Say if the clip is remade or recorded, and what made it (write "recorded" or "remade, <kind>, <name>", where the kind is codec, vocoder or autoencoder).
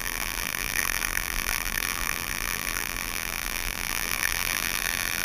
remade, vocoder, BigVGAN v2